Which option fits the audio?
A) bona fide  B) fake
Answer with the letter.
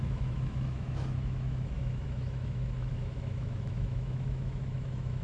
B